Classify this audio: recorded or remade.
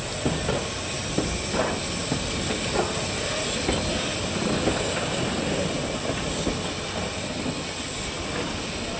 recorded